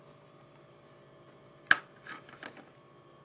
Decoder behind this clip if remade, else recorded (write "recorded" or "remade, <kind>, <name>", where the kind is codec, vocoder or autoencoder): recorded